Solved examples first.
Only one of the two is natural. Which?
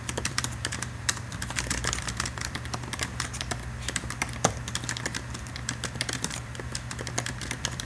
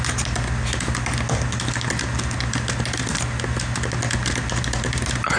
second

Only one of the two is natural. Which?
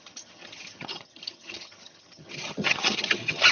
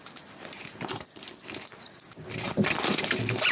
second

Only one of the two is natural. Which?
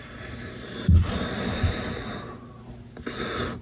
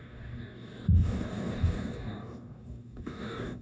first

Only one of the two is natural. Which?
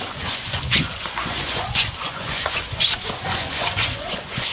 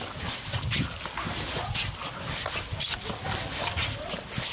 second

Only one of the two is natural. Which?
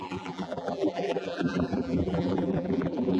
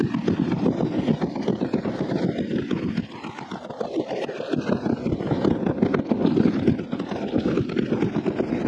second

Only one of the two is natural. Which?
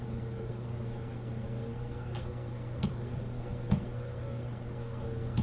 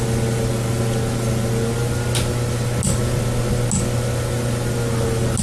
second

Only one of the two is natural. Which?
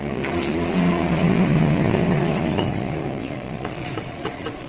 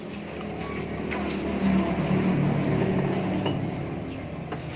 second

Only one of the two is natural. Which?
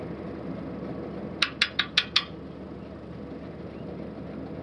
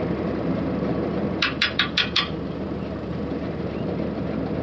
first